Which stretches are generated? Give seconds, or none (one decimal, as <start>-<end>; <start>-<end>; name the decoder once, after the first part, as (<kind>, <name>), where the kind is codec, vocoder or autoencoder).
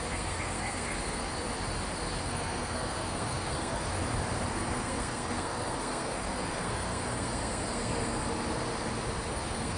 0.0-1.3 (codec, SNAC); 2.2-3.9; 4.5-8.2; 9.3-9.8